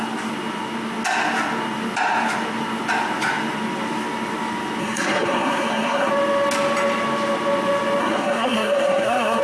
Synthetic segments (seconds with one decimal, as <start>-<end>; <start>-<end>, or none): 4.8-6.1; 8.0-9.4